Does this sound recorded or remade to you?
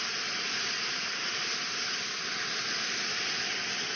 recorded